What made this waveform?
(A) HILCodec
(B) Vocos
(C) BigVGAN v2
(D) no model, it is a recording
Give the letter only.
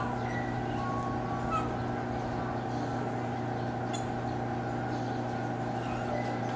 D